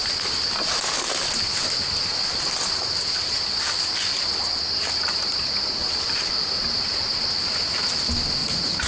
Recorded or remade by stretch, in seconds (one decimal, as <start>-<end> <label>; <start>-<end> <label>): 0.0-8.4 recorded; 8.4-8.9 remade